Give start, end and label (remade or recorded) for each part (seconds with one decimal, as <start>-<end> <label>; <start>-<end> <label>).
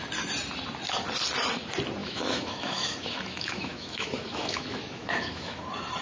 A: 0.0-2.0 recorded; 2.0-5.6 remade; 5.6-6.0 recorded